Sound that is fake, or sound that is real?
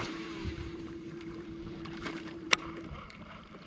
fake